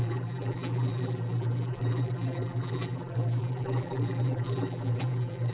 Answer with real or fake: fake